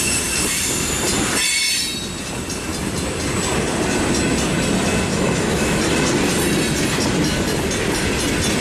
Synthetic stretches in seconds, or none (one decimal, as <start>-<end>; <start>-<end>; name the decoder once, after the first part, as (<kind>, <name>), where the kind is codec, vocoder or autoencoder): 5.1-5.8 (autoencoder, DAC-VAE)